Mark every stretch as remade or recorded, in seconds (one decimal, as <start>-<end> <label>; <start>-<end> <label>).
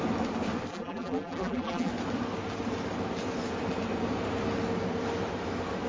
0.0-0.7 recorded; 0.7-1.9 remade; 1.9-5.9 recorded